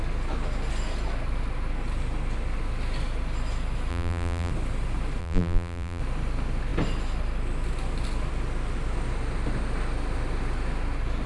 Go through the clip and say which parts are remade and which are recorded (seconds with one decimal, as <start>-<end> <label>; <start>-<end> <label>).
0.0-3.9 recorded; 3.9-4.5 remade; 4.5-5.2 recorded; 5.2-6.0 remade; 6.0-11.3 recorded